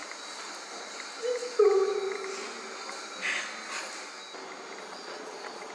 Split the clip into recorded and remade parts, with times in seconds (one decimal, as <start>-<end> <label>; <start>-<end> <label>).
0.0-4.8 recorded; 4.8-5.7 remade